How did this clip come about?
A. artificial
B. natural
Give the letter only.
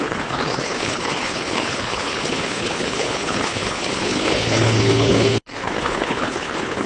A